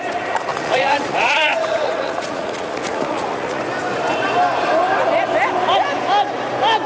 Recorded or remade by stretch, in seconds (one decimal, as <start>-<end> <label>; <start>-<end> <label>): 0.0-0.5 recorded; 0.5-3.6 remade; 3.6-6.9 recorded